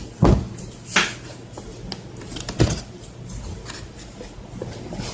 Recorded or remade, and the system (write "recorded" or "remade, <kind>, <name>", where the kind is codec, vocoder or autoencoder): recorded